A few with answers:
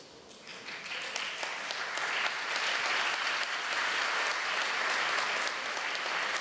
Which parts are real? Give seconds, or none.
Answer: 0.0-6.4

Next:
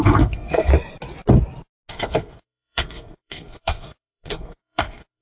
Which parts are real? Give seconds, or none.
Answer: 0.7-1.9

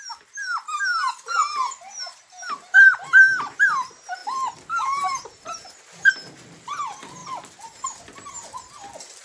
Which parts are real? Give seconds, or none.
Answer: 0.0-9.2

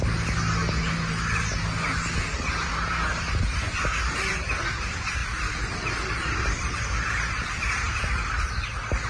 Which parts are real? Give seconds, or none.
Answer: 0.0-9.1

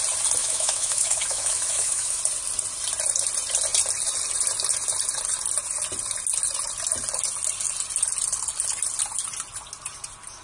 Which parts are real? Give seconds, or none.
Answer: 0.0-0.4; 2.2-10.4

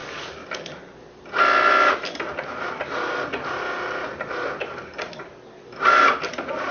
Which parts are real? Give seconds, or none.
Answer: 0.0-6.7

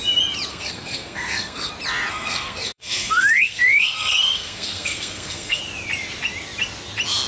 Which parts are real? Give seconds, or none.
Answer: 0.0-0.5; 1.7-2.1; 5.6-7.3